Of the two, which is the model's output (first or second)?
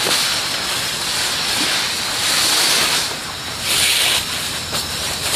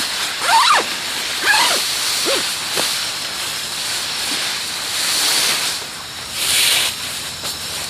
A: second